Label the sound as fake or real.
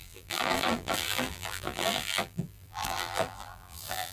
fake